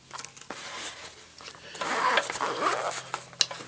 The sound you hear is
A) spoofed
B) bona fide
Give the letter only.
B